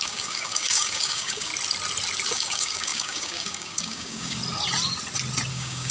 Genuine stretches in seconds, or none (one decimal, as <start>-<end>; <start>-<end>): 1.5-2.3; 4.4-5.5